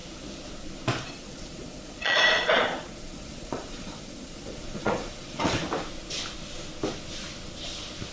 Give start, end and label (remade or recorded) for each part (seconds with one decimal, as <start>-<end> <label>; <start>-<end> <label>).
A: 0.0-1.1 recorded; 1.1-5.6 remade; 5.6-8.1 recorded